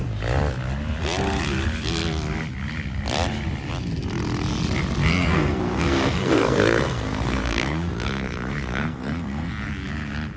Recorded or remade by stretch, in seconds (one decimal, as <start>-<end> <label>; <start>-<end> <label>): 0.0-5.1 recorded; 5.1-9.5 remade; 9.5-10.4 recorded

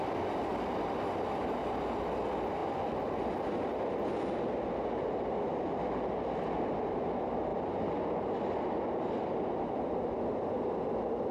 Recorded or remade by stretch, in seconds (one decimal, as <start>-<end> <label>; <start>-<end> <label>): 0.0-0.5 recorded; 0.5-2.0 remade; 2.0-11.3 recorded

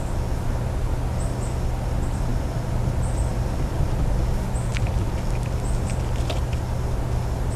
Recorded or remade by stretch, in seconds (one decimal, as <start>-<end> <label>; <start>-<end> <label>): 0.0-7.6 recorded